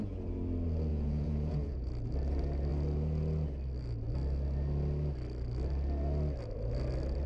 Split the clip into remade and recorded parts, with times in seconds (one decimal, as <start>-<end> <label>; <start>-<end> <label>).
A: 0.0-0.9 recorded; 0.9-1.9 remade; 1.9-7.3 recorded